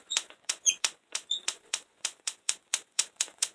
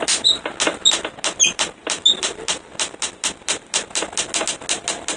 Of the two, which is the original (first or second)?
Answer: second